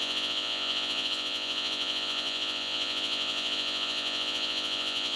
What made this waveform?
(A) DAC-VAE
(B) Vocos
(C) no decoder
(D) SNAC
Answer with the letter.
B